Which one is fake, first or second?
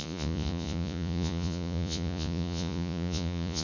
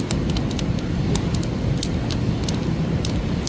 first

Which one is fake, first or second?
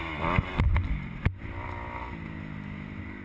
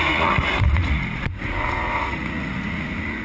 second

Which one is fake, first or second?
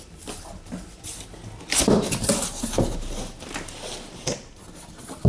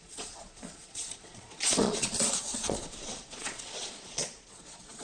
second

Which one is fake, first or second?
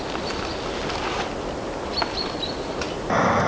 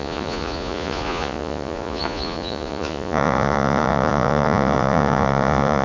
second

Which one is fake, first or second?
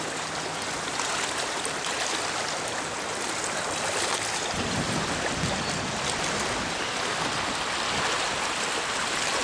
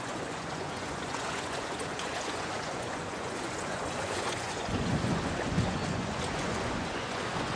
second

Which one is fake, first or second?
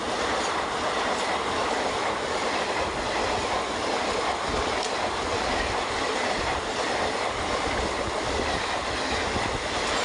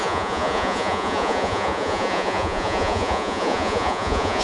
second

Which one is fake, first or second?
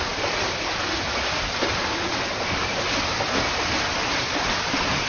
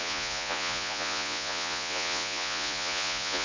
second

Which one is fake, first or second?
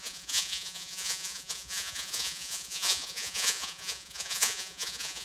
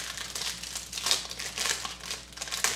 first